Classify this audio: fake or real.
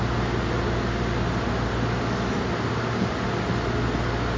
real